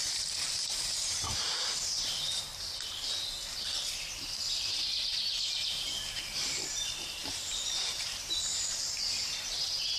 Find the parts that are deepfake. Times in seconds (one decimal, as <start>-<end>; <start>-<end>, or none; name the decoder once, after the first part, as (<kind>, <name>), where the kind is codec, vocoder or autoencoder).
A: 0.0-2.5 (vocoder, BigVGAN v2); 6.1-10.0